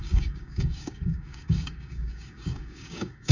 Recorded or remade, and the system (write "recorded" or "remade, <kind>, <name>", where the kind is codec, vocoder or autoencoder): remade, codec, DAC